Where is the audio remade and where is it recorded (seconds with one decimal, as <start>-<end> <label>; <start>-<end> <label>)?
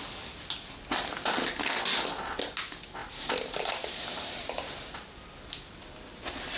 0.0-3.0 recorded; 3.0-6.1 remade; 6.1-6.6 recorded